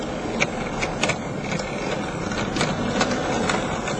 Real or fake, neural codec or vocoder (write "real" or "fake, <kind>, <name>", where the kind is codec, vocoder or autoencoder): real